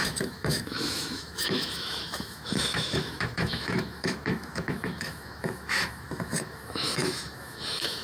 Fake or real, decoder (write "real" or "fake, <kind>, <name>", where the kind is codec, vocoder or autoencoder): fake, autoencoder, DAC-VAE